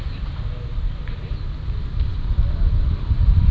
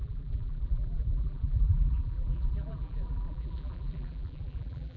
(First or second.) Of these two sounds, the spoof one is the second